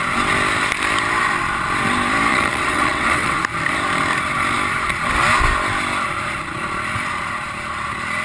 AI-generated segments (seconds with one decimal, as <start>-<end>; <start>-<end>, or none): 2.3-3.4